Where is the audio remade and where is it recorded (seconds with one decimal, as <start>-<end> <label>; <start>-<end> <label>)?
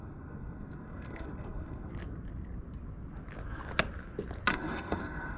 0.0-1.9 remade; 1.9-4.5 recorded; 4.5-5.4 remade